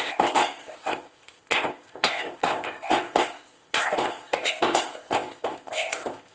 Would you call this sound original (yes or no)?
no